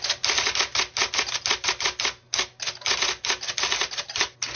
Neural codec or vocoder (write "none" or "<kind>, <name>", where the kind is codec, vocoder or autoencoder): none